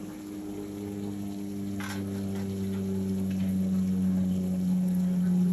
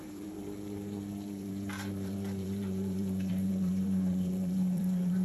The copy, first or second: second